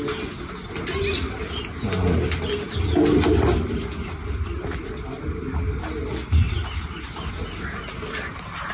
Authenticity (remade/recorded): recorded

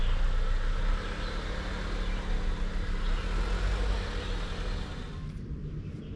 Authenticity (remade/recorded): recorded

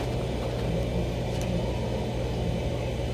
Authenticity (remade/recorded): recorded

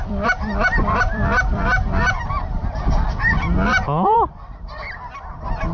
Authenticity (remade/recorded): remade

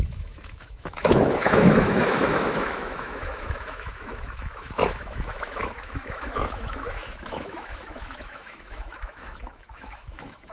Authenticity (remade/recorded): remade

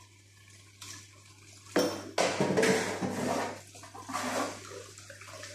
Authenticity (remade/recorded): recorded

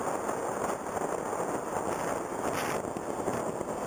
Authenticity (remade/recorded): recorded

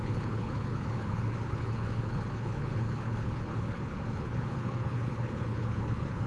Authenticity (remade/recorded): remade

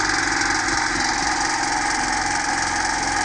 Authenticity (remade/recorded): recorded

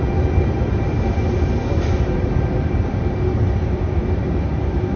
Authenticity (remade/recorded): recorded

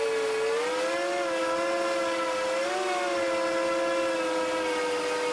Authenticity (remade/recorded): recorded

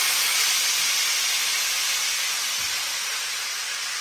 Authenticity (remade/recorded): recorded